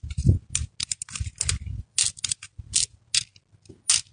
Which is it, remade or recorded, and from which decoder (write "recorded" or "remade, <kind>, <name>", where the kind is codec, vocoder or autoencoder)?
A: recorded